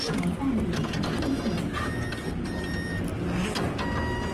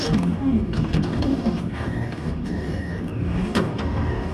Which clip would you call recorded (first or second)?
first